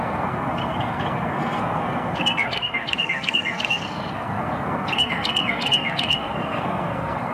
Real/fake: fake